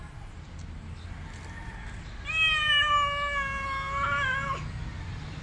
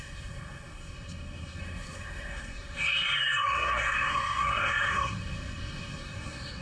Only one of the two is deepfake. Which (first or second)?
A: second